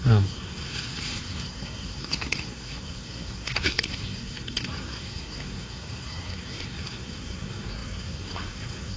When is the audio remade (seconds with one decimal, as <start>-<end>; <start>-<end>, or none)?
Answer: 0.0-9.0